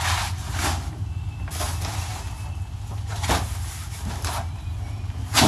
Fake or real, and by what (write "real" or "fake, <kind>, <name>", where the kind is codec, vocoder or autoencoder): real